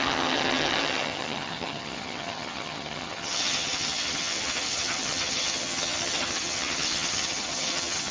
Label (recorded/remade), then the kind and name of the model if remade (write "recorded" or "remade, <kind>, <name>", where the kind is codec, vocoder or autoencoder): remade, vocoder, HiFi-GAN